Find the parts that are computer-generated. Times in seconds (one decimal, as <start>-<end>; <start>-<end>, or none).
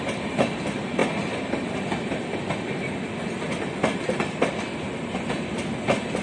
none